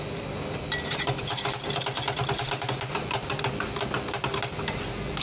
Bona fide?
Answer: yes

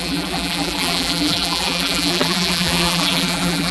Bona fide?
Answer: no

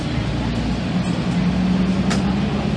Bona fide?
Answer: yes